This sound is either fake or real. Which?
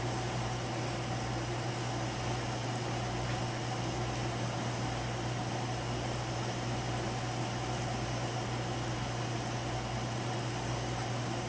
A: real